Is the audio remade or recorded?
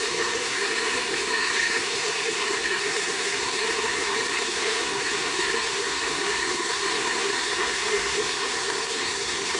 remade